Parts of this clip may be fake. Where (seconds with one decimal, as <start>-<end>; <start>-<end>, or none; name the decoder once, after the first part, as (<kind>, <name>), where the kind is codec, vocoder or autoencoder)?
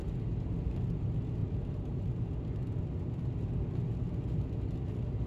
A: 1.4-2.3 (vocoder, BigVGAN v2)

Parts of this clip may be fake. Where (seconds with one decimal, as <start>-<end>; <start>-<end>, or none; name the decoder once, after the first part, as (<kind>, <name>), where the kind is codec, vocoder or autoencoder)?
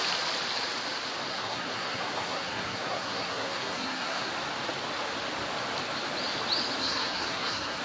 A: 1.3-4.3 (codec, SNAC); 6.8-7.8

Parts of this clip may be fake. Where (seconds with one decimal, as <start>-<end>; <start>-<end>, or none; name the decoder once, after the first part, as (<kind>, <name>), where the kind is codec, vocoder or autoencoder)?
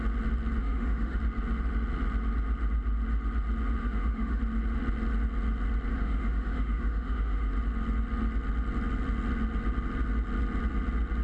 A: 0.6-1.2 (autoencoder, DAC-VAE); 3.8-4.4; 5.9-7.5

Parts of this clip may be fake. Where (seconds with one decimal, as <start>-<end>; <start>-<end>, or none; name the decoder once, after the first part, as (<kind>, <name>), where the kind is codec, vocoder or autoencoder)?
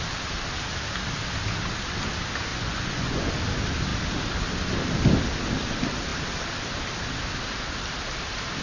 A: 2.5-3.3 (vocoder, Vocos)